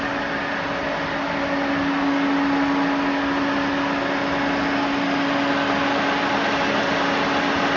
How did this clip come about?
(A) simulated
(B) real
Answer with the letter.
B